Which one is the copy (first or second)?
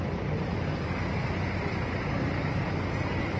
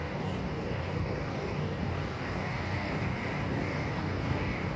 second